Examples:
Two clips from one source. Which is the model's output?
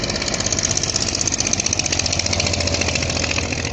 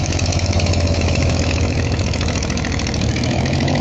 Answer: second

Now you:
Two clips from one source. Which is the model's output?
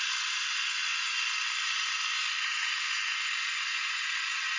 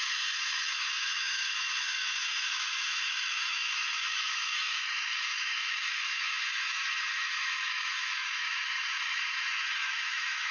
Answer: second